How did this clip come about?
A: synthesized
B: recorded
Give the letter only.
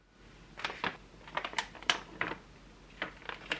B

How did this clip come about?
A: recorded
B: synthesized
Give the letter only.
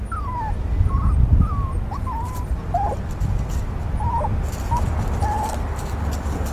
A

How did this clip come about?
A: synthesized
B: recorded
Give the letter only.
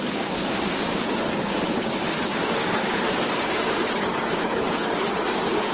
A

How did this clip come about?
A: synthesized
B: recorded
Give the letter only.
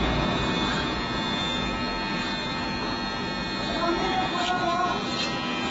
B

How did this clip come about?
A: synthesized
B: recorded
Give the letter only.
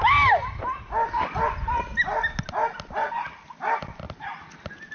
B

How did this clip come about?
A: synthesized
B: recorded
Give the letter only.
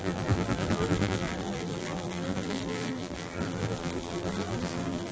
A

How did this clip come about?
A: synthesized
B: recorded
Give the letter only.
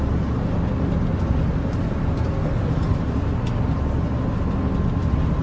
B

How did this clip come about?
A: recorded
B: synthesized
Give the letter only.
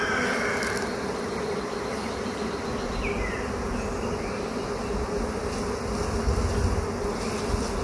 A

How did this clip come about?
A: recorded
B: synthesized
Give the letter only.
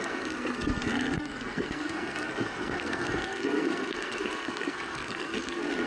B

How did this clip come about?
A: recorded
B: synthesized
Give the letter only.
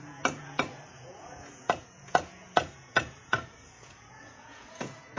B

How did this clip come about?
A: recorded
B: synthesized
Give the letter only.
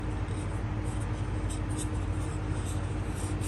A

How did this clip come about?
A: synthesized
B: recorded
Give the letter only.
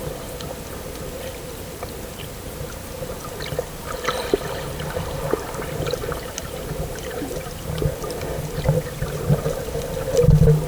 B